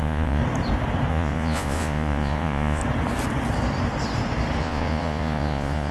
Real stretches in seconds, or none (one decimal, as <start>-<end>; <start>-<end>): 0.4-1.1; 2.8-4.6